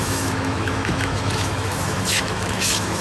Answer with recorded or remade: remade